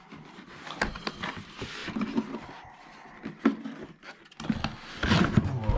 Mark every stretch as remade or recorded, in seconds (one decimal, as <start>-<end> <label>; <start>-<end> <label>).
0.0-5.8 recorded